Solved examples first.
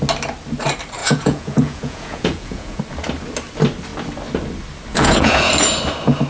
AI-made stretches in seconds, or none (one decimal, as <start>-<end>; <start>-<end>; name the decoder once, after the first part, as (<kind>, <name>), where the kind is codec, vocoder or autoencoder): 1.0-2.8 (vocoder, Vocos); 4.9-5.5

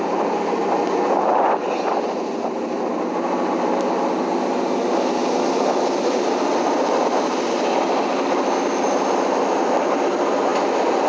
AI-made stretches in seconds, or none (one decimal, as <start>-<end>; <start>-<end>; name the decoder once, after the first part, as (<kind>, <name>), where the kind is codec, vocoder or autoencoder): none

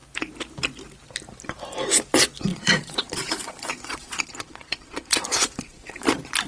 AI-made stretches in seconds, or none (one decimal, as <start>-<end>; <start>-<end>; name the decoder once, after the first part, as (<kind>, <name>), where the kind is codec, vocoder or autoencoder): 2.5-6.1 (vocoder, Vocos)

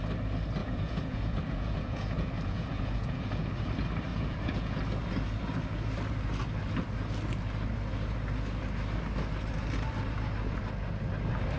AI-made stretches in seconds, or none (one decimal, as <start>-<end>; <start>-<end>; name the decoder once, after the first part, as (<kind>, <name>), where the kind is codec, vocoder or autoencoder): 0.6-3.5 (vocoder, Vocos); 4.1-4.8